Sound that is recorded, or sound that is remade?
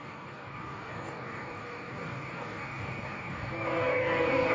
remade